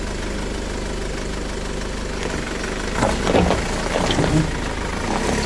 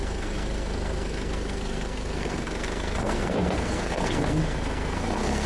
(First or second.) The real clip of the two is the first